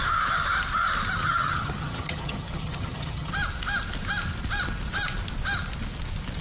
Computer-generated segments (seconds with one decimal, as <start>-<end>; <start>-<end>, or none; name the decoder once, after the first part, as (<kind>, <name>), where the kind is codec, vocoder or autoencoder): 1.2-3.3 (vocoder, HiFi-GAN)